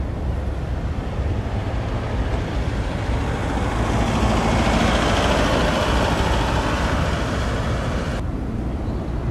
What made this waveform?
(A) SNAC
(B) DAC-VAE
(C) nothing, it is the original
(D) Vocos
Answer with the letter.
C